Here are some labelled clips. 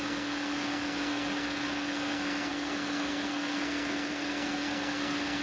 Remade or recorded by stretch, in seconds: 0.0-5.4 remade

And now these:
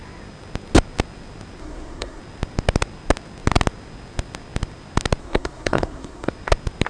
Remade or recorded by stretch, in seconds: 0.0-1.6 recorded; 1.6-2.2 remade; 2.2-5.2 recorded; 5.2-6.3 remade; 6.3-6.9 recorded

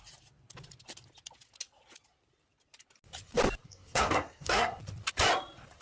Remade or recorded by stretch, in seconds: 0.0-3.6 recorded; 3.6-4.8 remade; 4.8-5.8 recorded

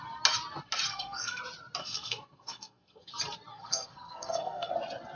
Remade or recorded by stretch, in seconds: 0.0-0.9 recorded; 0.9-1.4 remade; 1.4-1.8 recorded; 1.8-3.1 remade; 3.1-3.5 recorded; 3.5-4.7 remade; 4.7-5.2 recorded

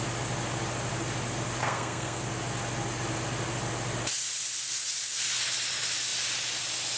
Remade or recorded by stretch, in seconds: 0.0-1.6 recorded; 1.6-2.2 remade; 2.2-7.0 recorded

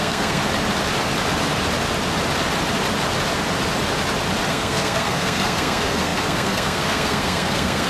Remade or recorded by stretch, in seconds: 0.0-0.4 remade; 0.4-4.5 recorded; 4.5-7.9 remade

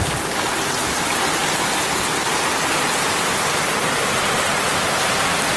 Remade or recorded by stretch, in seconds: 0.0-5.6 recorded

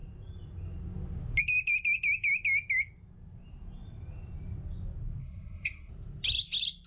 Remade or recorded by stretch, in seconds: 0.0-5.2 recorded; 5.2-5.9 remade; 5.9-6.9 recorded